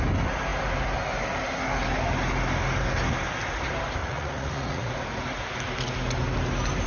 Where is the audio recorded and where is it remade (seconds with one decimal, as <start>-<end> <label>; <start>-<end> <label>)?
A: 0.0-4.0 recorded; 4.0-4.9 remade; 4.9-6.9 recorded